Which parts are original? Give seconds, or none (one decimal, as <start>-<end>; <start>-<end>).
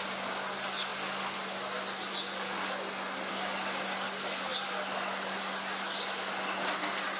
0.0-7.2